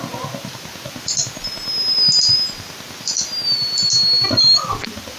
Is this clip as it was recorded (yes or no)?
yes